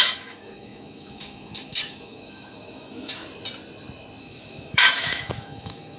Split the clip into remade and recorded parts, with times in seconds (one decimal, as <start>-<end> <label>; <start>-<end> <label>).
0.0-3.2 remade; 3.2-4.2 recorded; 4.2-6.0 remade